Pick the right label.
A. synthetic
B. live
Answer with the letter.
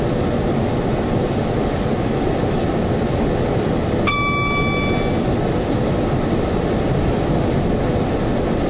B